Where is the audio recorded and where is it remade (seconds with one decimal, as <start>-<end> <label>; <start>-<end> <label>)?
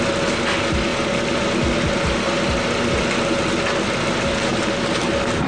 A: 0.0-5.5 recorded